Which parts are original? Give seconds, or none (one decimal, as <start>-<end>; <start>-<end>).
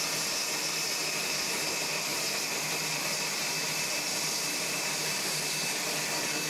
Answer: 0.0-1.0; 1.5-2.1; 6.0-6.5